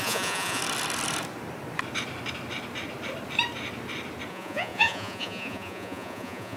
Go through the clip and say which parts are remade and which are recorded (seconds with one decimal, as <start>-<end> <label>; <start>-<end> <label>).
0.0-0.6 remade; 0.6-4.3 recorded; 4.3-6.6 remade